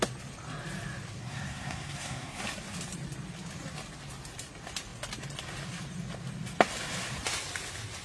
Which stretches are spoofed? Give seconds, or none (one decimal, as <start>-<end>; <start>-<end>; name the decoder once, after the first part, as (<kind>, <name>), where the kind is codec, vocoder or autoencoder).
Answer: 1.2-2.4 (codec, SNAC)